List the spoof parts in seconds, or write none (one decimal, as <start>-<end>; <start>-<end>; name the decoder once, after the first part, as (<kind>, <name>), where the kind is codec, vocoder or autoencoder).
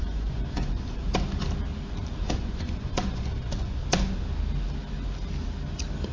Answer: 0.0-1.0 (vocoder, Vocos); 2.2-3.8